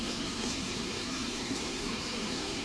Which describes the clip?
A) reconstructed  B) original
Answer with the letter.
A